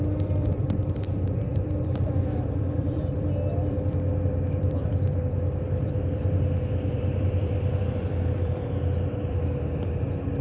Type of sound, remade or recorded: remade